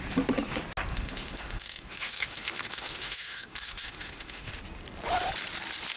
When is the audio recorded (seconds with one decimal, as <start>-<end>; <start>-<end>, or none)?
0.0-0.9; 4.5-6.0